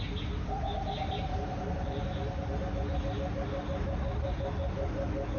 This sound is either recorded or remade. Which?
recorded